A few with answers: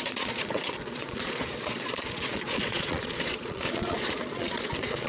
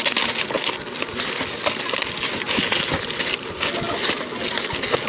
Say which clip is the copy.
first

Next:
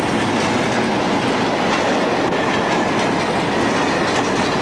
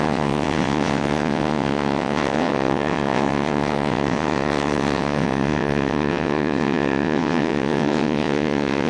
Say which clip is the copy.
second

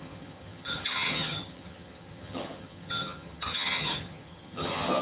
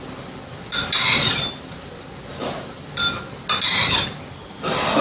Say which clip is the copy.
first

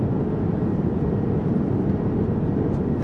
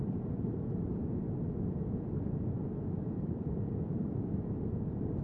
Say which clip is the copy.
second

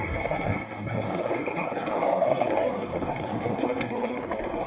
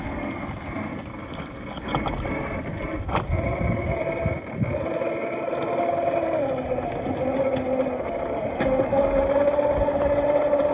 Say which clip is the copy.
first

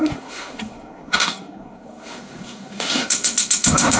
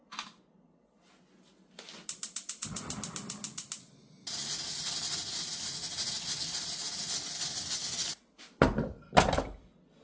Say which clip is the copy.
first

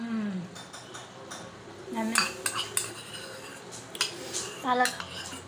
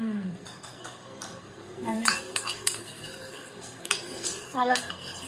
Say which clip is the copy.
second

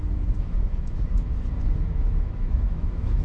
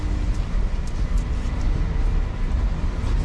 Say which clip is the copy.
first